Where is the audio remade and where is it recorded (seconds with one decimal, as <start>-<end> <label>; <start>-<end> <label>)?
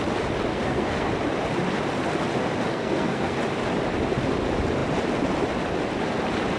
0.0-0.5 recorded; 0.5-1.1 remade; 1.1-2.7 recorded; 2.7-3.4 remade; 3.4-6.6 recorded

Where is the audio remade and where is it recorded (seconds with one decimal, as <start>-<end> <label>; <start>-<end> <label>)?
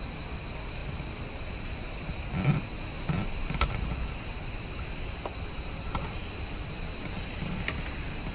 0.0-8.3 recorded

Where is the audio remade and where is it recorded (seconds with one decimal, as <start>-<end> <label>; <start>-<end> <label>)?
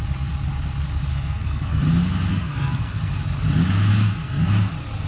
0.0-1.1 recorded; 1.1-1.8 remade; 1.8-2.3 recorded; 2.3-3.1 remade; 3.1-3.9 recorded; 3.9-4.5 remade; 4.5-5.1 recorded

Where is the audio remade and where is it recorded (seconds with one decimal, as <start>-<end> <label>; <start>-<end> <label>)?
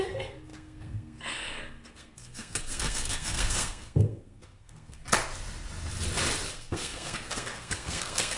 0.0-5.0 remade; 5.0-6.5 recorded; 6.5-8.4 remade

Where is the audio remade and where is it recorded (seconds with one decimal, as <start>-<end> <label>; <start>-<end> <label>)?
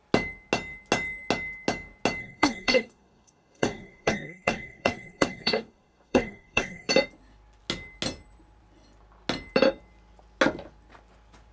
0.0-2.2 recorded; 2.2-6.9 remade; 6.9-11.5 recorded